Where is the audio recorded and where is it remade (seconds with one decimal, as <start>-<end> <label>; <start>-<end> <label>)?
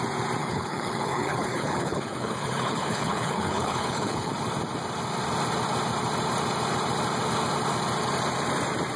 0.0-0.4 recorded; 0.4-4.3 remade; 4.3-9.0 recorded